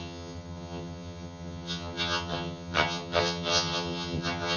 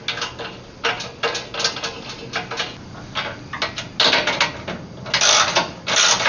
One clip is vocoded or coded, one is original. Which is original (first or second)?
second